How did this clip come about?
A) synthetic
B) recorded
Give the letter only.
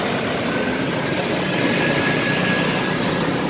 B